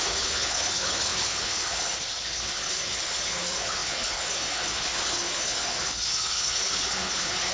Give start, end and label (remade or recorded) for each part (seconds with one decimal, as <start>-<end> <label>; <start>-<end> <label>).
0.0-7.5 remade